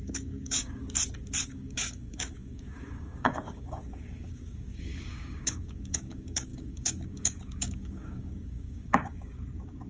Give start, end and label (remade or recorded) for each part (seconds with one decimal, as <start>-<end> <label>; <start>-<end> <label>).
0.0-0.8 remade; 0.8-1.4 recorded; 1.4-9.9 remade